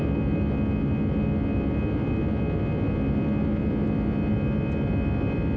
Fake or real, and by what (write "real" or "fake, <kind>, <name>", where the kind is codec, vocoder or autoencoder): real